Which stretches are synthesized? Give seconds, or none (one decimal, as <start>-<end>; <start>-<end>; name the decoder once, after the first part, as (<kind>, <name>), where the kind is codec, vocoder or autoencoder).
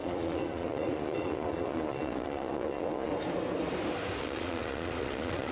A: 0.0-3.1 (vocoder, Vocos); 4.2-5.5